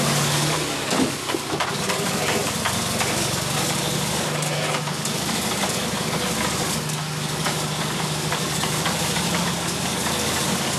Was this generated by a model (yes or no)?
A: yes